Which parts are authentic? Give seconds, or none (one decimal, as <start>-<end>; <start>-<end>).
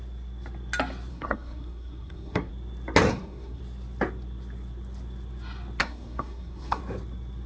0.0-1.1; 2.5-3.1; 3.6-5.8; 6.8-7.5